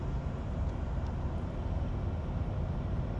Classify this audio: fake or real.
real